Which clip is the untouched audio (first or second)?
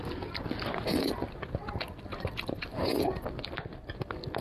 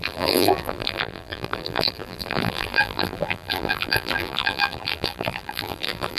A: first